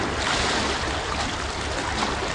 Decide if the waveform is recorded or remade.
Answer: recorded